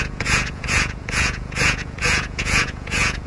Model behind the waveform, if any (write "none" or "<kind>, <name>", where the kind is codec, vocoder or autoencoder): vocoder, Vocos